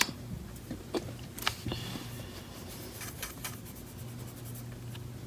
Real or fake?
real